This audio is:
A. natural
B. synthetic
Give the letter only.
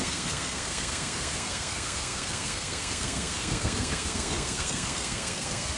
B